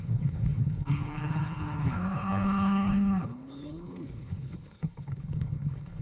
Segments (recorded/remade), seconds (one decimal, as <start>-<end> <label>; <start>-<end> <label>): 0.0-6.0 remade